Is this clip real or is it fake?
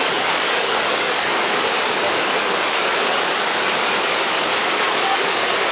fake